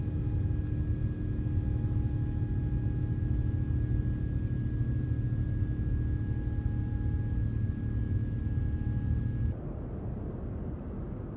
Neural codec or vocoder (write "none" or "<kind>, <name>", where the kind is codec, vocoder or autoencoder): none